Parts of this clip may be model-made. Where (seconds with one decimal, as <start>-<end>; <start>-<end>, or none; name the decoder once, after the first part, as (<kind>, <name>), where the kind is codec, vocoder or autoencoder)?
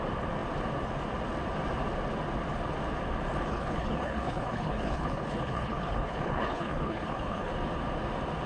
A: 3.5-7.5 (codec, HILCodec)